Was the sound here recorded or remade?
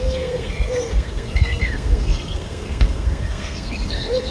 remade